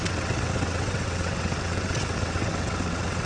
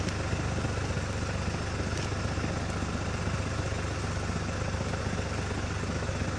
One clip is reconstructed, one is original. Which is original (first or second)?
second